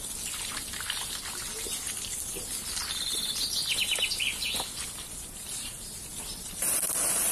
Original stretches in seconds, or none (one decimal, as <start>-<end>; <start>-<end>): 0.0-7.3